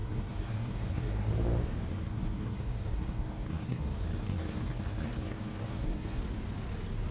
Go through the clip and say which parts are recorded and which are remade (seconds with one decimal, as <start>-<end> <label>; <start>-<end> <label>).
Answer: 0.0-1.3 remade; 1.3-1.9 recorded; 1.9-6.2 remade; 6.2-7.1 recorded